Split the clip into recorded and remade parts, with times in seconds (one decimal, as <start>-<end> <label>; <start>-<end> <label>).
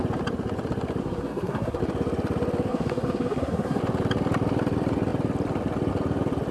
0.0-1.0 recorded; 1.0-1.8 remade; 1.8-2.7 recorded; 2.7-3.8 remade; 3.8-6.5 recorded